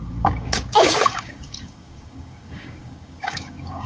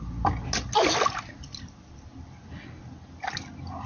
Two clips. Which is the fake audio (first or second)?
first